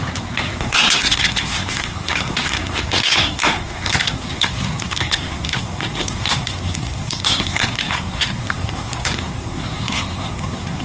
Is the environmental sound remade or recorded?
remade